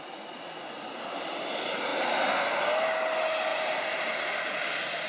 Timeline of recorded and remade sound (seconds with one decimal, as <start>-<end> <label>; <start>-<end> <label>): 0.0-3.5 recorded; 3.5-4.5 remade; 4.5-5.1 recorded